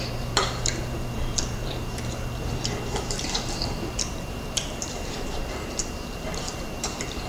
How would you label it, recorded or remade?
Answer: remade